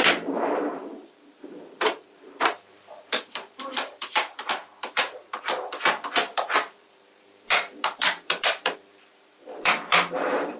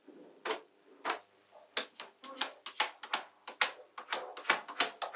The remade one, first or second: first